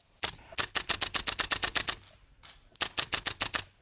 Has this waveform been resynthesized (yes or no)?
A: no